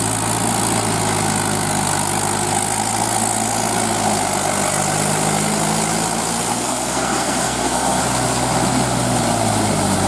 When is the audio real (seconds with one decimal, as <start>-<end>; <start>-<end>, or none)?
0.0-6.5; 8.0-10.1